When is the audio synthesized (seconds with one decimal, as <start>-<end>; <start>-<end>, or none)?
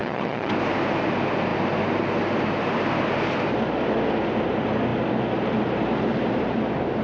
0.0-0.5